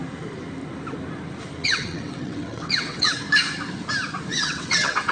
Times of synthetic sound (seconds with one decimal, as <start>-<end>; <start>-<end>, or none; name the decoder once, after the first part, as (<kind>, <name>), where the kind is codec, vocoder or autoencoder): 1.6-3.1 (vocoder, WaveNeXt); 4.3-5.1